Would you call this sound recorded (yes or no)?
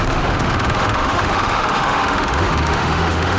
no